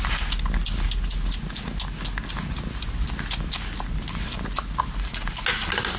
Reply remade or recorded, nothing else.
recorded